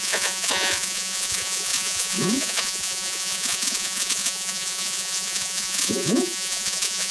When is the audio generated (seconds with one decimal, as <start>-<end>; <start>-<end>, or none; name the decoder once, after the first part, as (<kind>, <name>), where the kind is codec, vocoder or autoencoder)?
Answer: 0.0-7.1 (vocoder, Vocos)

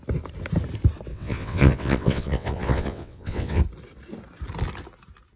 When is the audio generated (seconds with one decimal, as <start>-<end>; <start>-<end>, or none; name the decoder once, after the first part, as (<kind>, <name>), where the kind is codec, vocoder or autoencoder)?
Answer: 1.1-3.6 (vocoder, WaveNeXt)

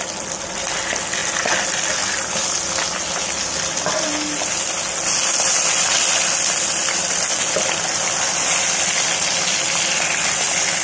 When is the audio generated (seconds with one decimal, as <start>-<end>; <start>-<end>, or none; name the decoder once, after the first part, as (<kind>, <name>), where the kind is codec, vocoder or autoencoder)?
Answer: none

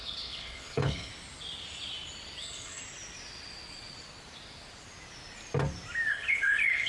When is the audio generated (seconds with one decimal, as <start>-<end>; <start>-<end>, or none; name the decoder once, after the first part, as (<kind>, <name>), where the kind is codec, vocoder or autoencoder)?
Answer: 0.0-1.1 (codec, HILCodec); 2.4-2.8; 6.1-6.9

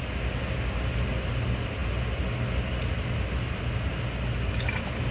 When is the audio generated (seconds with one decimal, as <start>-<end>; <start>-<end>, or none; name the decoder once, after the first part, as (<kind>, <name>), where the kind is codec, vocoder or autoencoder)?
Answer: none

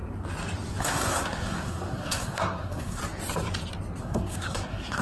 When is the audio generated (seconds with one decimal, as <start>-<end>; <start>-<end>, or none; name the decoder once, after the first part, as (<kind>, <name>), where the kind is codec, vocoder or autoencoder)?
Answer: 0.8-3.0 (codec, SNAC); 4.0-5.0